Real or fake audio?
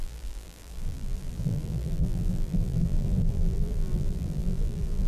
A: fake